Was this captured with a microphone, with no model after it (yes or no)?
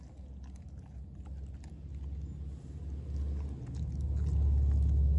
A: yes